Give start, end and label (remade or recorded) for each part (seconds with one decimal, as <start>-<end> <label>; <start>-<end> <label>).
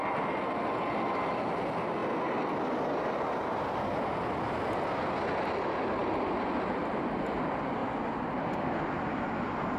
0.0-9.8 recorded